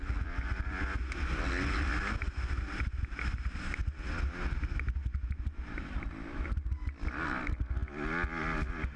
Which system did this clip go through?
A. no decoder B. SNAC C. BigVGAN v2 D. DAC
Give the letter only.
A